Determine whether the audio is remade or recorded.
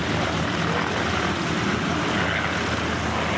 recorded